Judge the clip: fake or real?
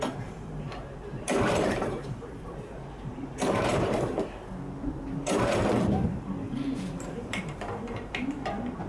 fake